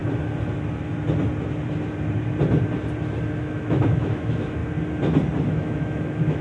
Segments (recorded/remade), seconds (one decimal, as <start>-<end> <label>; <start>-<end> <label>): 0.0-3.3 recorded; 3.3-4.6 remade; 4.6-5.5 recorded; 5.5-6.4 remade